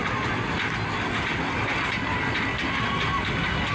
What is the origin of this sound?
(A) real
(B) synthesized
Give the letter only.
A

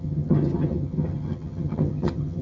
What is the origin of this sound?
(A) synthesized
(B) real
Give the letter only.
A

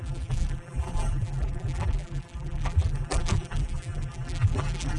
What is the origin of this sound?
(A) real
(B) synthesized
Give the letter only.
B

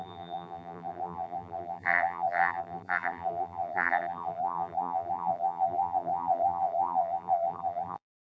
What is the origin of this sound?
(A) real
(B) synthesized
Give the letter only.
B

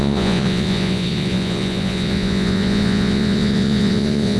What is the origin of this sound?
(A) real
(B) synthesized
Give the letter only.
B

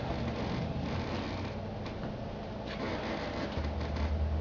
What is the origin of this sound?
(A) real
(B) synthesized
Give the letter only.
A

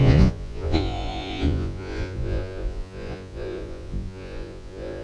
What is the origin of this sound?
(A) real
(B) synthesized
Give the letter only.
B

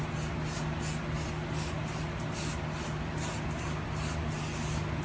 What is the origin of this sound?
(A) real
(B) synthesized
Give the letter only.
A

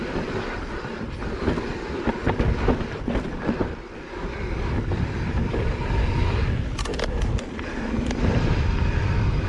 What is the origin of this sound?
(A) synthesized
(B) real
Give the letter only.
B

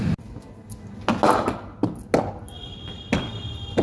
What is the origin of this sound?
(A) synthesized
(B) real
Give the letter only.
B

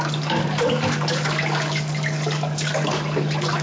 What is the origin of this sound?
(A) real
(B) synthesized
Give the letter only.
B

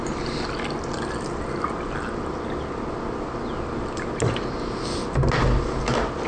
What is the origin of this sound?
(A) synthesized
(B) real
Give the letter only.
B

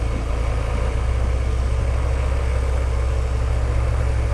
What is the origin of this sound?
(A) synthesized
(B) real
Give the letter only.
B